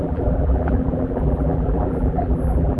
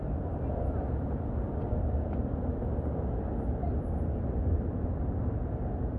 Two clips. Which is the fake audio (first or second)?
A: first